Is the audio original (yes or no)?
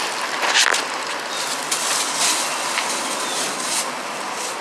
yes